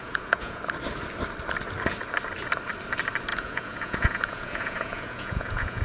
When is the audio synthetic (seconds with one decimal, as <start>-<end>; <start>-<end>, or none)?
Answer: 0.0-0.6; 3.3-5.8